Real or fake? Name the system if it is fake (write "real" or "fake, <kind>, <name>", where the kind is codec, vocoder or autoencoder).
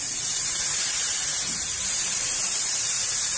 fake, vocoder, BigVGAN v2